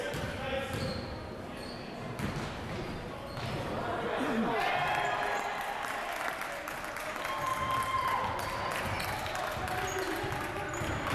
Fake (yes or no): no